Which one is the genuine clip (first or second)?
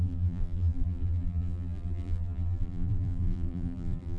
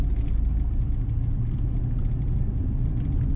second